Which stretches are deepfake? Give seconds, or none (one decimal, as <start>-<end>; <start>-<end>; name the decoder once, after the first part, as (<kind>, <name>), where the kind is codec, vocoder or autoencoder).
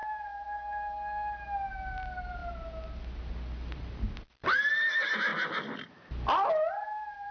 none